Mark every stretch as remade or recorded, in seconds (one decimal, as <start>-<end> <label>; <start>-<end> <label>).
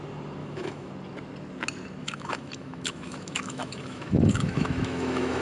0.0-0.4 recorded; 0.4-0.9 remade; 0.9-2.0 recorded; 2.0-5.4 remade